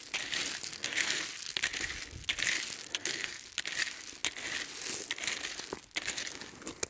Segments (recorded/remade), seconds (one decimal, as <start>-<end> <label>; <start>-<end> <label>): 0.0-0.7 recorded; 0.7-1.2 remade; 1.2-3.0 recorded; 3.0-3.5 remade; 3.5-6.9 recorded